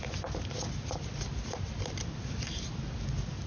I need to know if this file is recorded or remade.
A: recorded